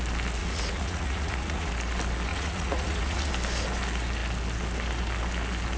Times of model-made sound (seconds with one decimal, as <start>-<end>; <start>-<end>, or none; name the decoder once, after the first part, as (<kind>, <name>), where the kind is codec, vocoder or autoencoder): 0.4-1.7 (vocoder, Vocos); 2.3-3.3